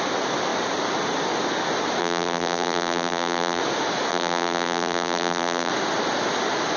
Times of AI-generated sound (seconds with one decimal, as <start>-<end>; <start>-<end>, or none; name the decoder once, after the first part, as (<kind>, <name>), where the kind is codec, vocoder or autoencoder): 2.0-3.6 (vocoder, BigVGAN v2); 4.1-5.7